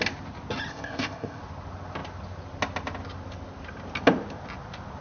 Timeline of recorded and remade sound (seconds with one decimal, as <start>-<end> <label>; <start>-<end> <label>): 0.0-0.7 recorded; 0.7-1.4 remade; 1.4-5.0 recorded